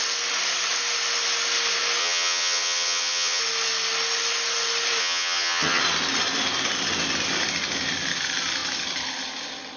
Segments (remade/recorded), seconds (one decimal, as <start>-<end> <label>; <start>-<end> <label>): 0.0-2.0 recorded; 2.0-3.4 remade; 3.4-5.0 recorded; 5.0-5.8 remade; 5.8-9.8 recorded